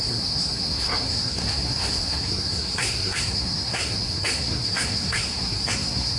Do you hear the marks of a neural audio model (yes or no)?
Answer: yes